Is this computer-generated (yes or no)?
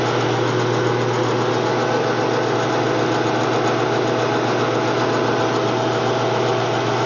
no